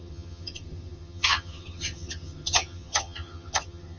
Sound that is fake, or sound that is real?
fake